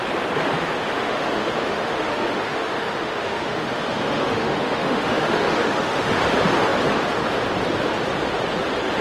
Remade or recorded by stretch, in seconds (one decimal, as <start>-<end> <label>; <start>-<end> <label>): 0.0-0.9 recorded; 0.9-6.1 remade; 6.1-9.0 recorded